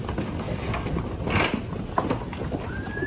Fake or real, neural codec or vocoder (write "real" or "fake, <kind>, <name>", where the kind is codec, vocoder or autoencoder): real